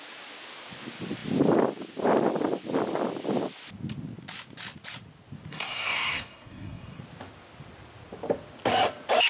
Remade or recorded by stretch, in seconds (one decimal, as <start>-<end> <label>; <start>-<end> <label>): 0.0-5.5 recorded; 5.5-7.0 remade; 7.0-9.3 recorded